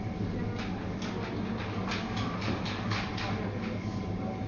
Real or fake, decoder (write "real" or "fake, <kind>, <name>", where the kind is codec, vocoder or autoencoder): real